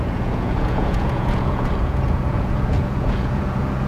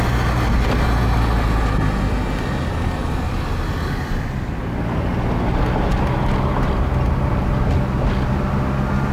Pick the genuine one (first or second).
second